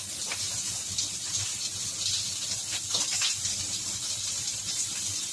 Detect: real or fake real